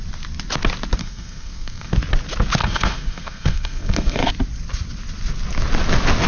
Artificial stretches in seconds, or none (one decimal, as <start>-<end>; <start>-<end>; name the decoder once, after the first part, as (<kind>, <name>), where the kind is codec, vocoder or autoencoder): 1.0-1.9 (codec, SNAC); 2.6-4.3